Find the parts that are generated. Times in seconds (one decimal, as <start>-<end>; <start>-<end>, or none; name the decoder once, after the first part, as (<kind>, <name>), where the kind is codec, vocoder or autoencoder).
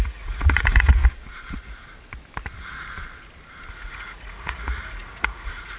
0.0-1.0 (vocoder, Vocos); 3.7-5.8